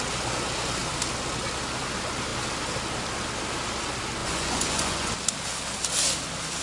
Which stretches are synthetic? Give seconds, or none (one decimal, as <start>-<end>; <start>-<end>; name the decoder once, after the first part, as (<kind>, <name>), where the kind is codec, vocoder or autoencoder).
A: 4.2-5.1 (vocoder, Vocos)